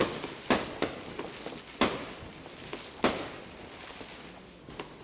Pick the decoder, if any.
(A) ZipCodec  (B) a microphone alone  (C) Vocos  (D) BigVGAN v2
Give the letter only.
B